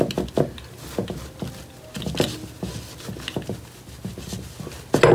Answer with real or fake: real